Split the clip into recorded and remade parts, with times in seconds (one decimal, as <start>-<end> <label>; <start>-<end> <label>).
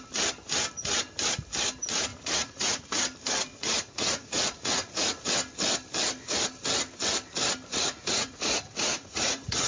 0.0-2.1 recorded; 2.1-3.0 remade; 3.0-3.5 recorded; 3.5-5.2 remade; 5.2-7.7 recorded; 7.7-9.7 remade